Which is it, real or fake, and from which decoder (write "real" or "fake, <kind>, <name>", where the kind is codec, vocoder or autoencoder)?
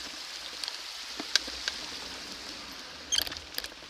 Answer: real